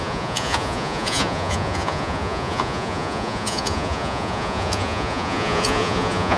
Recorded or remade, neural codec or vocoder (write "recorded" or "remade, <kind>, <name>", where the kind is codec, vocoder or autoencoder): remade, vocoder, Vocos